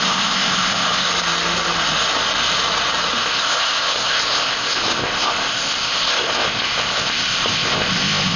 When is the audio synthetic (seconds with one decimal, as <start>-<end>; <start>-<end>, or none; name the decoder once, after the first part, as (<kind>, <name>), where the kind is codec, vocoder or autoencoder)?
0.0-1.1 (codec, ZipCodec); 3.2-8.4